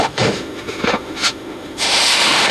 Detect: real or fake fake